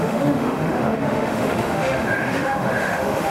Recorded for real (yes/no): no